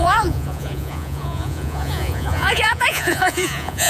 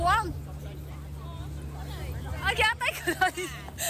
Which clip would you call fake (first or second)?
first